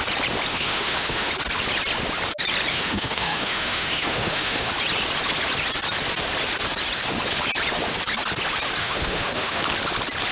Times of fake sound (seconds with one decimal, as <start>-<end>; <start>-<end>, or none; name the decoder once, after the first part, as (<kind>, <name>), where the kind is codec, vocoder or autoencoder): 0.5-1.3 (autoencoder, DAC-VAE); 2.7-4.7; 8.8-9.6